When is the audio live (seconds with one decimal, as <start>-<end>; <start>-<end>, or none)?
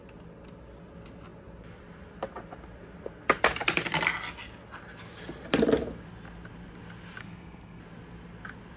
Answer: 0.0-7.2; 7.8-8.8